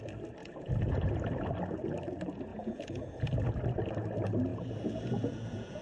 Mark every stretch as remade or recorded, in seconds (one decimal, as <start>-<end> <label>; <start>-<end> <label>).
0.0-0.4 recorded; 0.4-1.1 remade; 1.1-2.5 recorded; 2.5-3.4 remade; 3.4-4.5 recorded; 4.5-5.8 remade